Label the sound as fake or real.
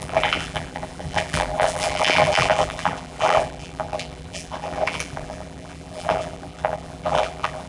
fake